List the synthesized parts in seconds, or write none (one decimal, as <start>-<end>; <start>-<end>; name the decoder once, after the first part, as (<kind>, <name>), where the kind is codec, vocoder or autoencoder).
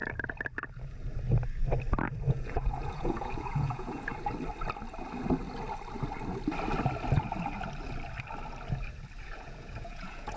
2.3-4.1 (vocoder, Vocos); 9.2-10.4